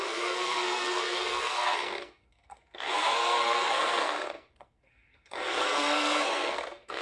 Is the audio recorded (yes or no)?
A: no